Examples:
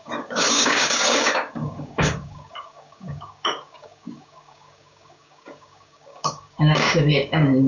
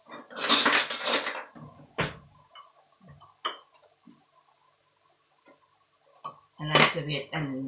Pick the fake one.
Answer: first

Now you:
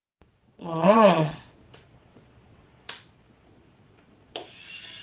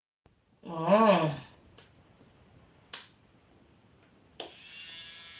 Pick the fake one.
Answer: first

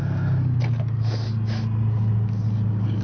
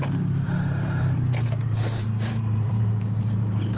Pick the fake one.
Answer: second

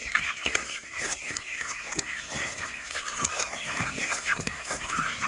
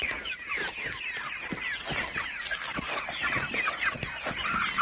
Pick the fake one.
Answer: first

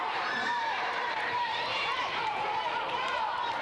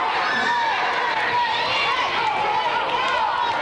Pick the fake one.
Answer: first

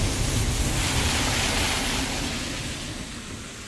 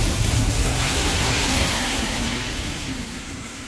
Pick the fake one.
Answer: second